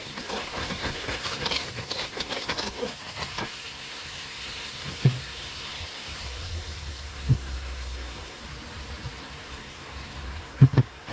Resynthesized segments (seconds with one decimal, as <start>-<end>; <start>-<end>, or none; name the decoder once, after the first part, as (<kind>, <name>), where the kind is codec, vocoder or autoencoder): 0.0-8.4 (codec, SNAC); 9.2-11.1